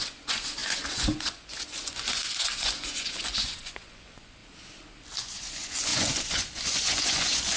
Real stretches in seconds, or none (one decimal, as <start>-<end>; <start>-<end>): 4.4-5.2